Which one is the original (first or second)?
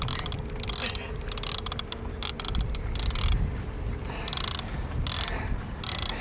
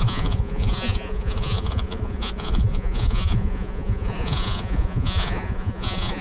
first